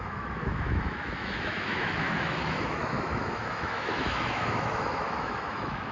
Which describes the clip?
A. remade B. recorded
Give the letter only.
A